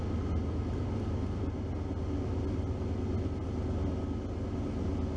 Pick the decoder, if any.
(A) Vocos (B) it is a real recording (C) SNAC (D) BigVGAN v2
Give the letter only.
B